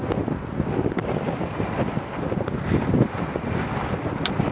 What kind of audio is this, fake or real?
real